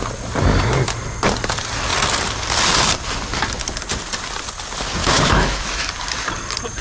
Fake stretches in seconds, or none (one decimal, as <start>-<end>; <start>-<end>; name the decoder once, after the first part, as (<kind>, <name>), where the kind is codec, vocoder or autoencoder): 5.0-5.9 (autoencoder, DAC-VAE)